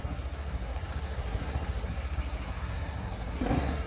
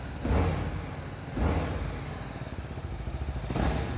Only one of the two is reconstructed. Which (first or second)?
first